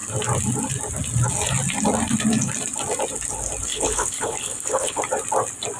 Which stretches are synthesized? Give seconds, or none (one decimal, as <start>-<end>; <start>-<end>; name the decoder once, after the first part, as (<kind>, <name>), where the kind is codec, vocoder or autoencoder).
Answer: 3.7-5.0 (codec, HILCodec)